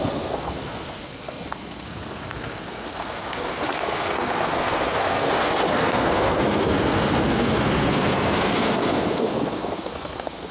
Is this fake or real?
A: fake